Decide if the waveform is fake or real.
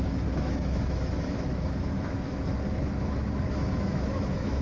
fake